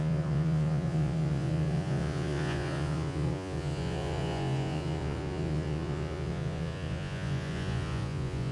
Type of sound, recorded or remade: remade